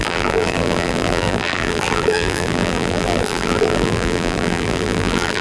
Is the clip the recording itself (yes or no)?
no